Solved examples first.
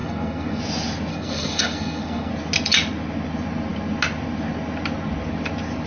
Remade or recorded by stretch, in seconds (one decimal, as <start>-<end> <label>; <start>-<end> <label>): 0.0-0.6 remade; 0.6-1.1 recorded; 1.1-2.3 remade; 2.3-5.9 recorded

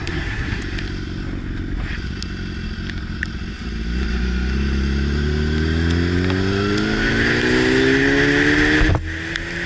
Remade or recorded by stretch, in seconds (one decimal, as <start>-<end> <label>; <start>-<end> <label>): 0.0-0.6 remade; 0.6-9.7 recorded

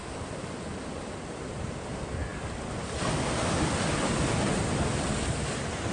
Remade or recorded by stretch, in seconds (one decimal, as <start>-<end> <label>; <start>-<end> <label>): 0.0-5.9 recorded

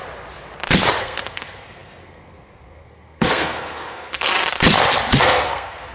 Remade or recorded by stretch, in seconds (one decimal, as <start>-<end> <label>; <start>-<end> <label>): 0.0-1.0 recorded; 1.0-4.3 remade; 4.3-5.2 recorded; 5.2-5.9 remade